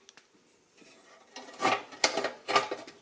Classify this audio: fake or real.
real